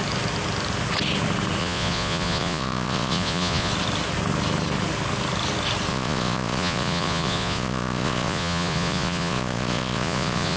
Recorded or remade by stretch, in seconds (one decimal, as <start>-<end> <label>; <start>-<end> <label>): 0.0-1.6 recorded; 1.6-3.7 remade; 3.7-5.9 recorded; 5.9-10.6 remade